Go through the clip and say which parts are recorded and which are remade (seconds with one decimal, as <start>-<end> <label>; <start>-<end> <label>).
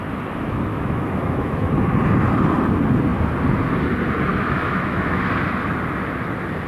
0.0-0.7 recorded; 0.7-1.7 remade; 1.7-4.3 recorded; 4.3-5.2 remade; 5.2-6.7 recorded